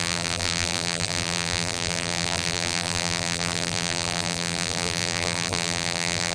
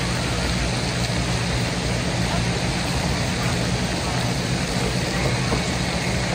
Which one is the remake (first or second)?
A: first